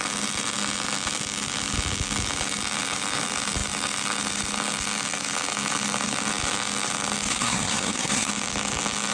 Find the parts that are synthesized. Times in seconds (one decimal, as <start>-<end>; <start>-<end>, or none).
7.3-8.3